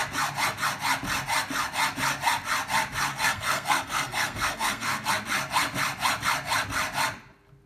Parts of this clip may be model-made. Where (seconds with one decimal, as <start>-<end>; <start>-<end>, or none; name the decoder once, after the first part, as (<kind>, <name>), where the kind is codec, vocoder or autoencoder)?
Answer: 3.1-5.1 (codec, SNAC)